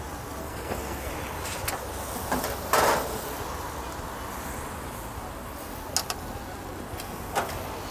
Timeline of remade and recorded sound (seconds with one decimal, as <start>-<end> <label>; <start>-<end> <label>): 0.0-0.4 recorded; 0.4-1.1 remade; 1.1-7.9 recorded